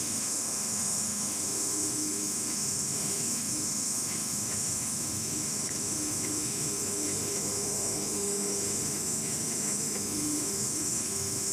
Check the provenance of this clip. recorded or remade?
remade